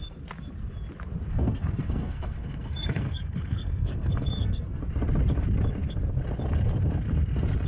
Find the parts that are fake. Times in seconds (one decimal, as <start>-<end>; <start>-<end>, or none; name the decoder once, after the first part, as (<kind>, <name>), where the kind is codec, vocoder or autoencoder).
1.3-4.8 (codec, SNAC)

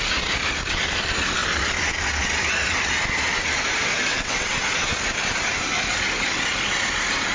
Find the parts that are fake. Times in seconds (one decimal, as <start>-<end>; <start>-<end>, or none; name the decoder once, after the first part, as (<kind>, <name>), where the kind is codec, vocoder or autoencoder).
3.9-4.6 (vocoder, WaveNeXt)

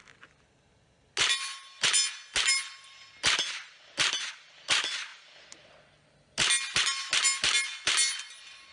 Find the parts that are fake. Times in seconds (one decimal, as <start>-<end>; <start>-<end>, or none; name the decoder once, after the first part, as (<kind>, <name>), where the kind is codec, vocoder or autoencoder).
none

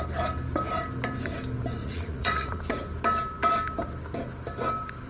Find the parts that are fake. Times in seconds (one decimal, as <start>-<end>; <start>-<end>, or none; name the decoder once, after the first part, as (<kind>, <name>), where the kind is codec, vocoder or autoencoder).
1.8-2.6 (vocoder, Vocos)

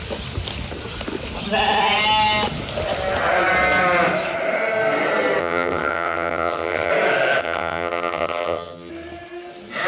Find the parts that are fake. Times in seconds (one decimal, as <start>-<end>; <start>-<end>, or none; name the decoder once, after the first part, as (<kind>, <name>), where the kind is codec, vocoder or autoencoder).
5.4-6.9 (vocoder, HiFi-GAN); 7.4-8.9

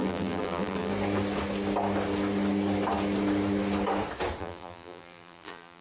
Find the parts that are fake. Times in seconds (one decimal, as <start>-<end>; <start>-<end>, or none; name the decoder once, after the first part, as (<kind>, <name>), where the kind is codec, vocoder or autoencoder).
0.0-0.9 (vocoder, BigVGAN v2); 4.4-5.8